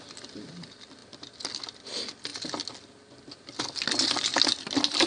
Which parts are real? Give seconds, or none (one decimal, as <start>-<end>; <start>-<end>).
0.0-5.1